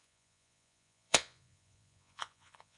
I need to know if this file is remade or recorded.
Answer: remade